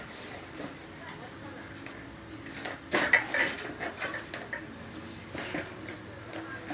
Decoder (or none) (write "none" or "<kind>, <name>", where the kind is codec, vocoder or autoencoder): none